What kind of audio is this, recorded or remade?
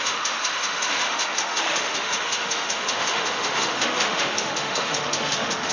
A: remade